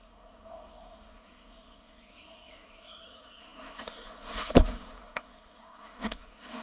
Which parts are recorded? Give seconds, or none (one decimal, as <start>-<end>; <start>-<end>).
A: none

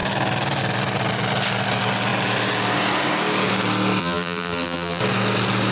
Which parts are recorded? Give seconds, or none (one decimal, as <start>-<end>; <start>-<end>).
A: 0.0-4.0; 5.0-5.7

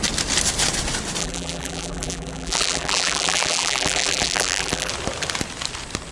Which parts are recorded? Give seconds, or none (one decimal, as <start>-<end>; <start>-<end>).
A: 0.0-1.2; 4.9-6.1

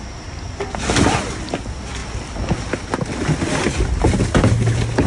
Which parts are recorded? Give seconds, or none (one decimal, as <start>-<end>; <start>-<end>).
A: 0.0-5.1

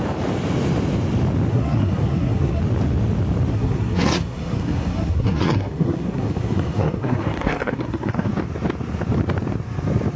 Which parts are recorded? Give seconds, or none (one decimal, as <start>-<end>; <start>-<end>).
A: 0.0-1.5; 2.6-3.5; 8.3-10.2

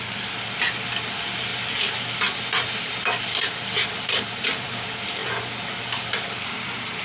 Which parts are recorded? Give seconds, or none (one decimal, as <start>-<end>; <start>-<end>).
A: 1.5-3.2; 5.2-6.0

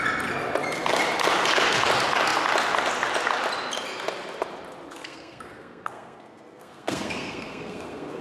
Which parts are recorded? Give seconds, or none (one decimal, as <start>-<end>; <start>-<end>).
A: 0.0-5.0